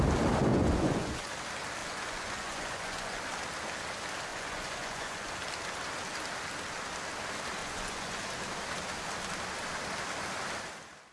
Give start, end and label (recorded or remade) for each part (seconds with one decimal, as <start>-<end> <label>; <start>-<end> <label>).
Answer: 0.0-0.5 recorded; 0.5-1.3 remade; 1.3-1.8 recorded; 1.8-3.2 remade; 3.2-4.3 recorded; 4.3-5.3 remade; 5.3-7.6 recorded; 7.6-8.2 remade; 8.2-11.1 recorded